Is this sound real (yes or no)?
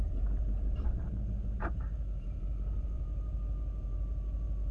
no